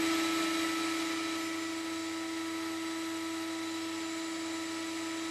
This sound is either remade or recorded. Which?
recorded